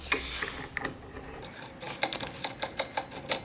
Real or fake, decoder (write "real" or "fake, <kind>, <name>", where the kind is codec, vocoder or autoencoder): real